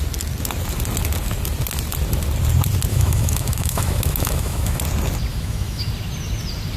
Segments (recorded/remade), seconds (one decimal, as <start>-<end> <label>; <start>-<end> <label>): 0.0-2.9 recorded; 2.9-4.8 remade; 4.8-5.3 recorded; 5.3-5.9 remade; 5.9-6.8 recorded